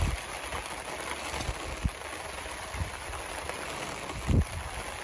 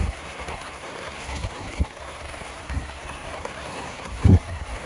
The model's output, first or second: second